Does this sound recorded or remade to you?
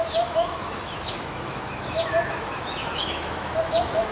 remade